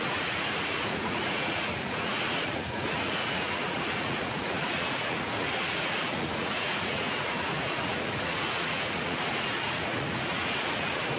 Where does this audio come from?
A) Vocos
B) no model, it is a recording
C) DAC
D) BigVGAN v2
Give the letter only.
A